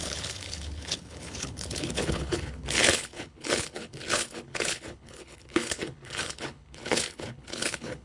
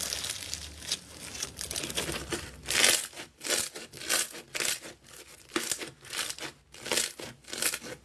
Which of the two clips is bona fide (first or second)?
second